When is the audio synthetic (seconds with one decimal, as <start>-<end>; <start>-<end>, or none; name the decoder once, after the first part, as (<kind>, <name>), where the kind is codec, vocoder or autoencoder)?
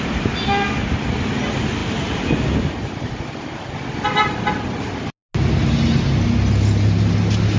none